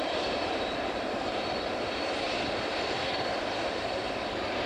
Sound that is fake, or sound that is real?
fake